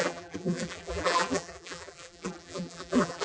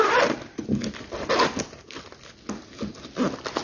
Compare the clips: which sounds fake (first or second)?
first